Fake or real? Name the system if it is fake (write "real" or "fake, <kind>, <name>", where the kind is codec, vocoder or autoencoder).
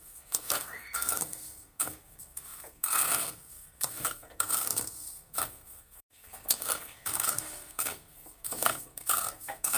fake, codec, SNAC